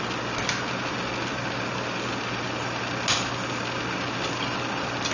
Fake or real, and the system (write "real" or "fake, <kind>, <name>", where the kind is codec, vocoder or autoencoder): real